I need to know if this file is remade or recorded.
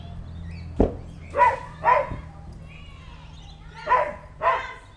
recorded